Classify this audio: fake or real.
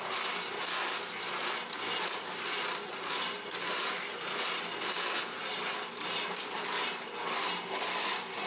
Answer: real